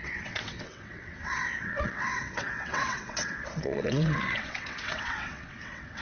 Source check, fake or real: fake